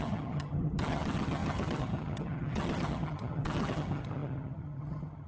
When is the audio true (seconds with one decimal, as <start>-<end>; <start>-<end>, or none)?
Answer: none